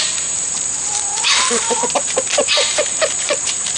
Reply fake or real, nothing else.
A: fake